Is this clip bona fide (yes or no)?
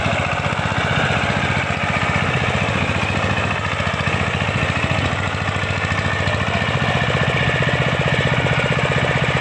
yes